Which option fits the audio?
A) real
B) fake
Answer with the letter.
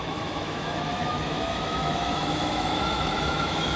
B